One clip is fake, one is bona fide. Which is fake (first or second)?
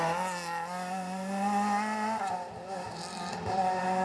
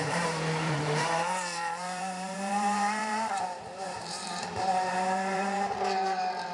second